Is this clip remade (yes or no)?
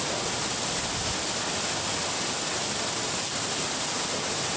no